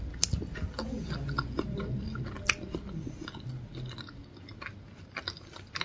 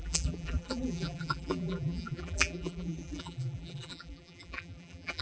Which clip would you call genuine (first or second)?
first